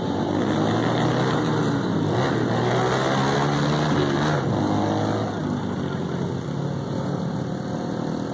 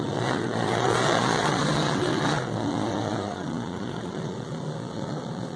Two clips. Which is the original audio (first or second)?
first